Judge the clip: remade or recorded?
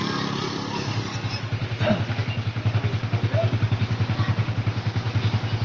recorded